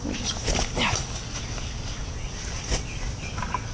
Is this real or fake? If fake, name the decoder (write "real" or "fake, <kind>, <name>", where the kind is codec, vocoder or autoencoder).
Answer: real